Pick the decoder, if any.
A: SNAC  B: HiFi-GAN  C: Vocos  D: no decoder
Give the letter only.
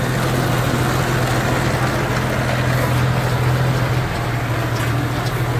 D